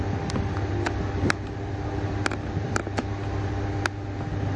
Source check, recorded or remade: recorded